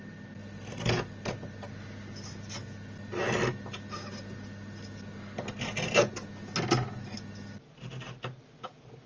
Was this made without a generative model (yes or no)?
yes